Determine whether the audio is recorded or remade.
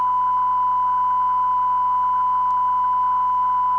recorded